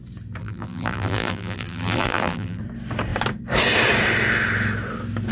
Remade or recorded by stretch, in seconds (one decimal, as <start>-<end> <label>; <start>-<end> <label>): 0.0-0.4 recorded; 0.4-2.6 remade; 2.6-5.3 recorded